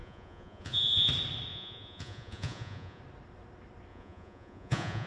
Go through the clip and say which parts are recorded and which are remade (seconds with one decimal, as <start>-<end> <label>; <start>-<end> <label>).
0.0-1.1 remade; 1.1-1.5 recorded; 1.5-3.0 remade; 3.0-3.9 recorded; 3.9-5.1 remade